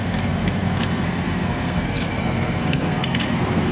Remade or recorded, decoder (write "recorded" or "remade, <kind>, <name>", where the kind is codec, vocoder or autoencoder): remade, codec, SNAC